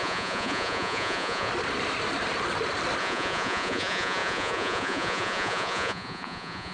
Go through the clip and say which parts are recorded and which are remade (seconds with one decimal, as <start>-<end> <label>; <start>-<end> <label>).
0.0-1.5 remade; 1.5-3.0 recorded; 3.0-6.7 remade